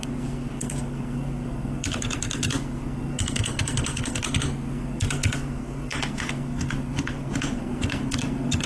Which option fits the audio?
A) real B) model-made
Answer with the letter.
B